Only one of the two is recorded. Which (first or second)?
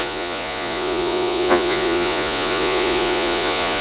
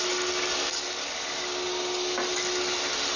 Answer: second